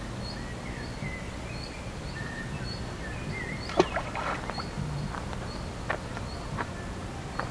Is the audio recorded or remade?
recorded